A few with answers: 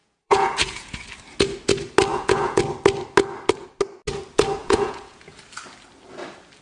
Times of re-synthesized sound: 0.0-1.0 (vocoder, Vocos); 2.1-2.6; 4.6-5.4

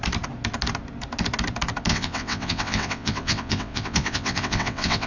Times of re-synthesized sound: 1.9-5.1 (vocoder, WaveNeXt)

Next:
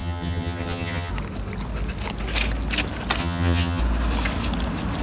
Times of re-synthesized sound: 0.0-1.1 (vocoder, HiFi-GAN); 3.2-3.8